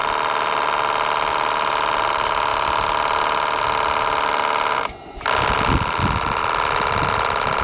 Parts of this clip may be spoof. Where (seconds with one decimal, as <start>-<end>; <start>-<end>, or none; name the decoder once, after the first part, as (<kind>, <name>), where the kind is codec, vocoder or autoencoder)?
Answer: none